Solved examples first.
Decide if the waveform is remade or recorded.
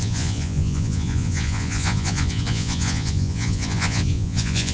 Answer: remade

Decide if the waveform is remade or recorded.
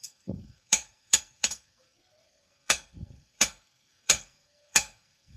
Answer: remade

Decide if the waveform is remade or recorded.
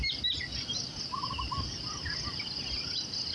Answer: recorded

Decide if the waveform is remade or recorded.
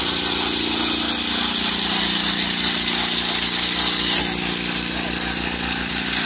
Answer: recorded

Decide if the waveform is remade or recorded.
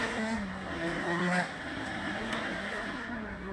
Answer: remade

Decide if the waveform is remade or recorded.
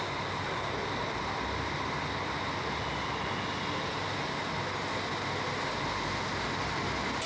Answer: recorded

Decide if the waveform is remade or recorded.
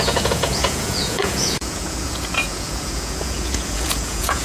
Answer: remade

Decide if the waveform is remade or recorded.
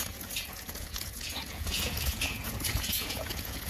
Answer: remade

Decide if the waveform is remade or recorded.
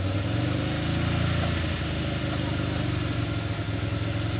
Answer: recorded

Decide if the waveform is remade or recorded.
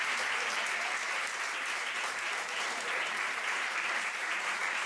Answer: remade